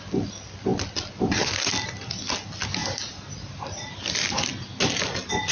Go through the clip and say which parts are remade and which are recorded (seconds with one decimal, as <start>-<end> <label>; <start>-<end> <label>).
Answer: 0.0-2.8 recorded; 2.8-3.9 remade; 3.9-5.5 recorded